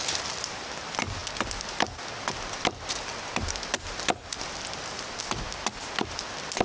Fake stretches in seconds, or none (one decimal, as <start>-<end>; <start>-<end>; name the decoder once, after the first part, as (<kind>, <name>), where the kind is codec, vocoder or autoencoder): none